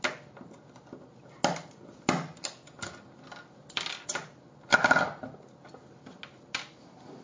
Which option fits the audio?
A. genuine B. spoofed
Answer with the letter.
A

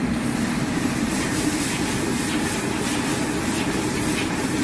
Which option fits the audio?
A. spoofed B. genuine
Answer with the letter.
A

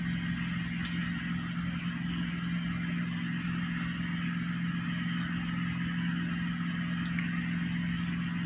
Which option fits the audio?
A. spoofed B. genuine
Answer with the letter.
B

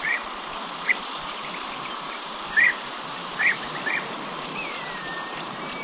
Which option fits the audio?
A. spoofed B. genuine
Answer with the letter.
A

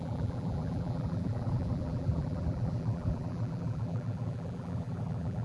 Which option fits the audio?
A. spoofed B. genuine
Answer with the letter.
A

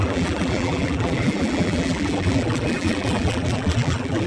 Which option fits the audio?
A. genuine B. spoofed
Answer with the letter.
B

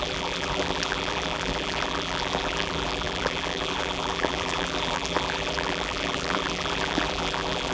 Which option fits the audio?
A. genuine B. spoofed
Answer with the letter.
B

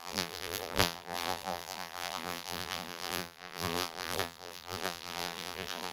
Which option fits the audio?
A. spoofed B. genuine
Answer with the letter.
A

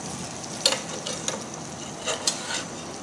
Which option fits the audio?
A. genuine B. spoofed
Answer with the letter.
A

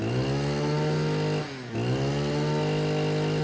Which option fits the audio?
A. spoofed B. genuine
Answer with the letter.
B